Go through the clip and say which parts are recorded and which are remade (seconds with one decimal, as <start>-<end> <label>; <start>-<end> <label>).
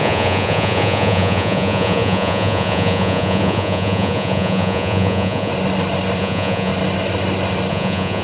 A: 0.0-5.5 remade; 5.5-6.2 recorded; 6.2-6.7 remade; 6.7-7.7 recorded; 7.7-8.2 remade